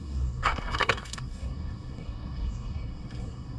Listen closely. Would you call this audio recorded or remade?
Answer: remade